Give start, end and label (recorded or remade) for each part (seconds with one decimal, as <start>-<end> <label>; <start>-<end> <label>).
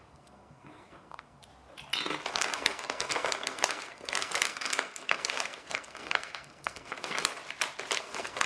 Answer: 0.0-1.5 remade; 1.5-2.3 recorded; 2.3-7.4 remade; 7.4-8.0 recorded; 8.0-8.5 remade